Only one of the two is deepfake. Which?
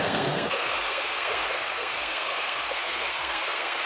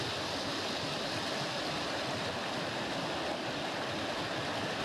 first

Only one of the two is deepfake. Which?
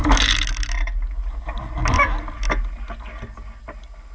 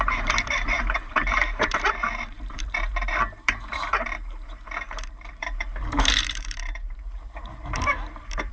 second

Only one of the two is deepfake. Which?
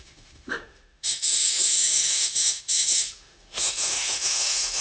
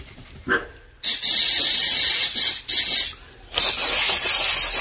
first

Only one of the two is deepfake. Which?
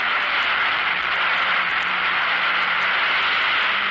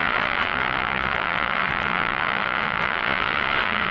second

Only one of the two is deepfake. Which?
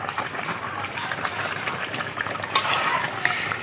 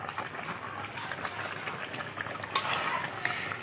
first